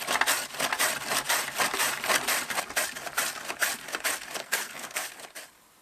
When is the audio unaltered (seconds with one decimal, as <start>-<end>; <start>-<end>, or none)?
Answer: 0.0-4.4; 5.1-5.8